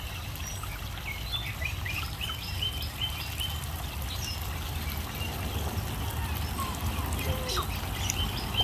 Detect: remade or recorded recorded